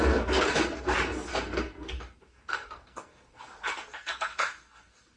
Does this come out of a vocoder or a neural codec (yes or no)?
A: yes